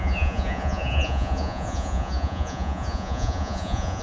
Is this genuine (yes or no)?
no